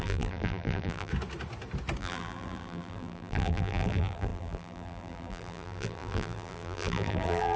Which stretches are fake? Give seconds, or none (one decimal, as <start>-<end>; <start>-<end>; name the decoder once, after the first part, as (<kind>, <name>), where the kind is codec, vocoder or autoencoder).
0.0-1.1 (vocoder, BigVGAN v2); 2.0-7.6